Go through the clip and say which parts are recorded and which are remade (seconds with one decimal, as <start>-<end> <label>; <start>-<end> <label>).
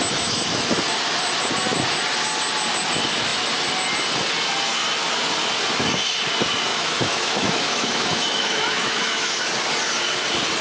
0.0-6.7 recorded; 6.7-9.4 remade; 9.4-10.6 recorded